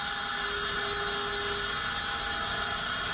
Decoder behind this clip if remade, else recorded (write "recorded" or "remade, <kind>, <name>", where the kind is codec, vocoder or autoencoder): recorded